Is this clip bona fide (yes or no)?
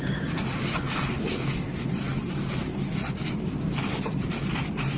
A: yes